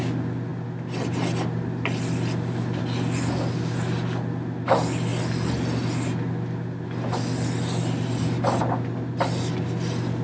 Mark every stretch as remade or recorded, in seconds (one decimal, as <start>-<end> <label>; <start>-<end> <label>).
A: 0.0-10.2 recorded